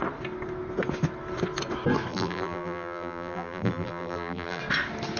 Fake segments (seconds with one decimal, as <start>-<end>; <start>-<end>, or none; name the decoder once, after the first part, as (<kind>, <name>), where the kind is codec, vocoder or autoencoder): 2.1-4.6 (vocoder, BigVGAN v2)